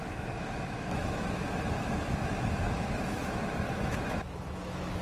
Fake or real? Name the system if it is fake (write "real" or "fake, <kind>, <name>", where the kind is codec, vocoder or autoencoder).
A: fake, autoencoder, DAC-VAE